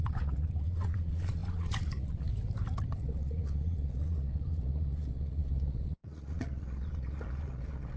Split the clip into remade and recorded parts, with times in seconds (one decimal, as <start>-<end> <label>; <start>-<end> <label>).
0.0-2.3 remade; 2.3-2.9 recorded; 2.9-8.0 remade